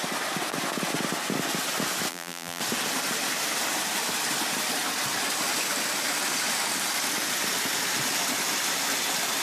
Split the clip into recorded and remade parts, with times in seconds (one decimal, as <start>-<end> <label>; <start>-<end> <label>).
0.0-2.1 recorded; 2.1-2.6 remade; 2.6-9.4 recorded